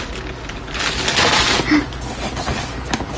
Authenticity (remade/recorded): recorded